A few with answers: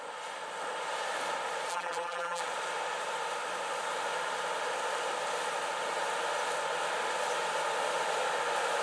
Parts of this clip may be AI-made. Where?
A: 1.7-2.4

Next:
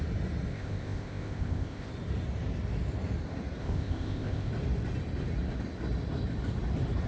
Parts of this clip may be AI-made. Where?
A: 0.5-1.9; 3.6-4.5

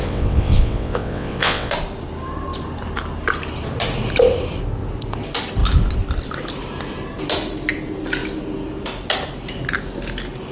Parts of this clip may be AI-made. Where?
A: 0.0-1.7